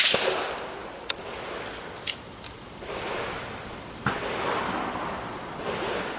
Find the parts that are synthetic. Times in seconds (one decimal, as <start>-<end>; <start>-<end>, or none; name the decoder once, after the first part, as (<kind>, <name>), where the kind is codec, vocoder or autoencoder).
none